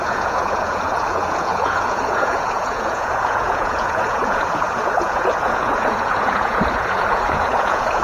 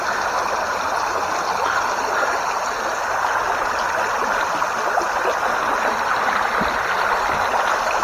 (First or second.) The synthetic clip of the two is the first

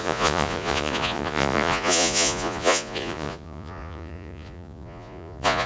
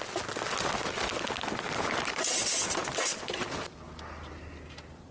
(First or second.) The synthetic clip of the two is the first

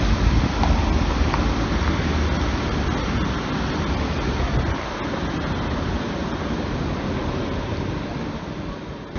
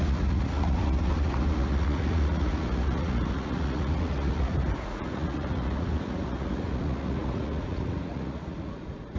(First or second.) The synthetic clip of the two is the second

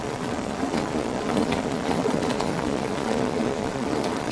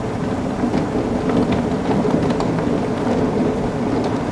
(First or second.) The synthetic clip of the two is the first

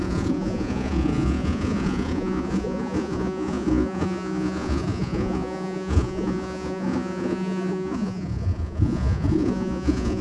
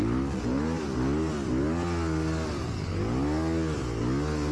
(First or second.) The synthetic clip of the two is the first